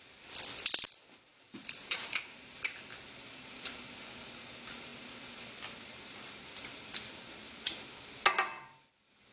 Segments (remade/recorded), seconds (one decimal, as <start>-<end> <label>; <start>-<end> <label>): 0.0-1.3 recorded; 1.3-2.6 remade; 2.6-9.3 recorded